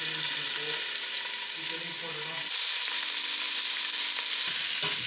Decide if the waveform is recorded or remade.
recorded